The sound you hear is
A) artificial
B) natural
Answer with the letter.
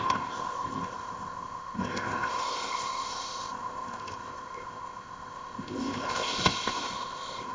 A